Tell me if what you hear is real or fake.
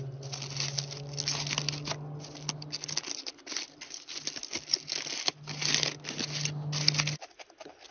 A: real